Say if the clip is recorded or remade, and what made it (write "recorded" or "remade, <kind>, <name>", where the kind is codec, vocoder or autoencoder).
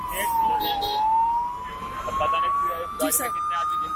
recorded